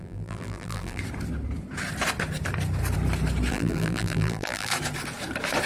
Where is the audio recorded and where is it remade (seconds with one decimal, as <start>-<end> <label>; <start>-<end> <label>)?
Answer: 0.0-1.0 remade; 1.0-3.5 recorded; 3.5-4.7 remade; 4.7-5.7 recorded